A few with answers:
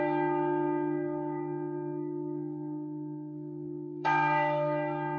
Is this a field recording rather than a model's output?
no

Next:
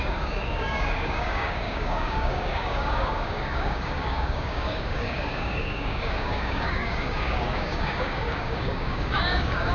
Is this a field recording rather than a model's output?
no